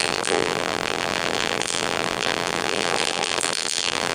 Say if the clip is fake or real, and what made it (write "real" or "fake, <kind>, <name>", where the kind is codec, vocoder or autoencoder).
fake, vocoder, BigVGAN v2